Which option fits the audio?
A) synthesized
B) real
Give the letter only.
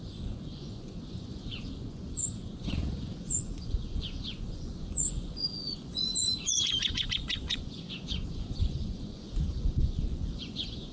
A